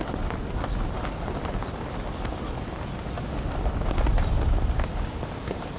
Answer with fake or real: real